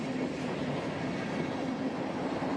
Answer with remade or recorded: remade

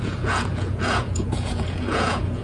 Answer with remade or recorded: remade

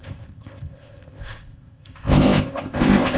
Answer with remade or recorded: remade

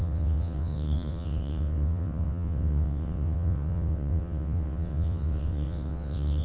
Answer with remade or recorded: remade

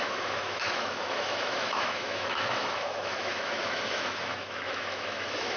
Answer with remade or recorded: remade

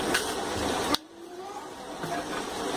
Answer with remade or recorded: recorded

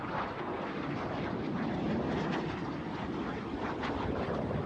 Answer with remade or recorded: recorded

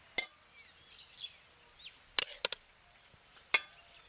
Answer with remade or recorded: recorded